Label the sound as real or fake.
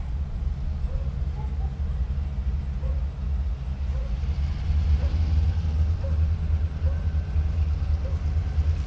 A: real